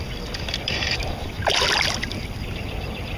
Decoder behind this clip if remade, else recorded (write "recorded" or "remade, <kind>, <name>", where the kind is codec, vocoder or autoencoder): recorded